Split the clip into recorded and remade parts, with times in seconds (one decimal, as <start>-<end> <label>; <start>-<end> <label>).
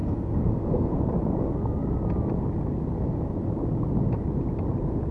0.0-1.0 remade; 1.0-5.1 recorded